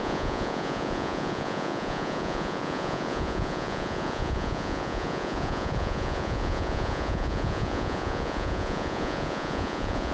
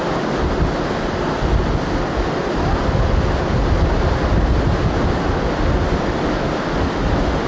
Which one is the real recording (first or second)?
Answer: second